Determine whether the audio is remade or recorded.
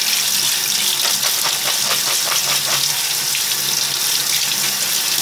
recorded